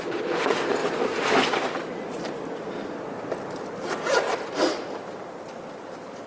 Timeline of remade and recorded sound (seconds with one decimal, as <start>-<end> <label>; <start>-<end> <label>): 0.0-6.3 recorded